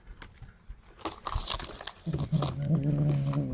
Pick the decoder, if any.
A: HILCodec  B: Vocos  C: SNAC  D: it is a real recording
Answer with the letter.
D